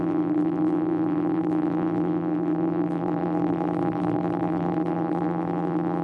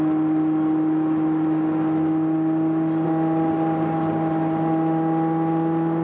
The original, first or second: second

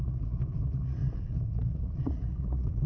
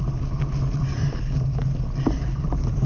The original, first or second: second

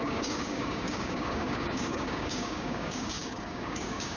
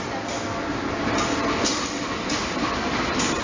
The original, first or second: second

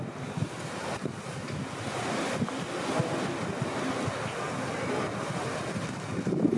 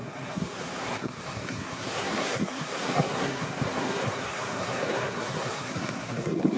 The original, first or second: first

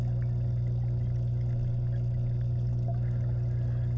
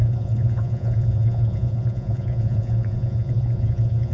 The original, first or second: first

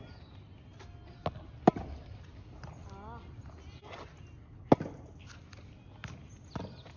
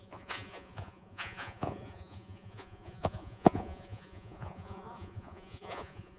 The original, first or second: first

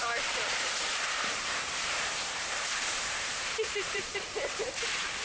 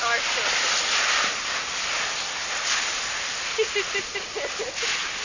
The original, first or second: second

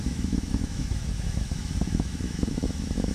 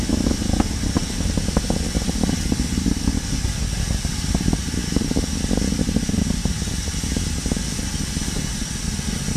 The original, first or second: second